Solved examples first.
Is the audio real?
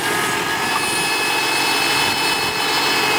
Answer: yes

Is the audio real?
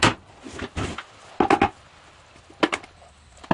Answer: yes